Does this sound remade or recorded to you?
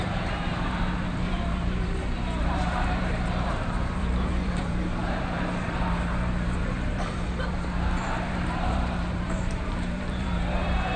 remade